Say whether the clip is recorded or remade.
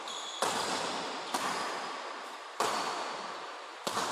recorded